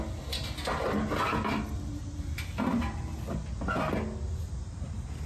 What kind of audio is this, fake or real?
real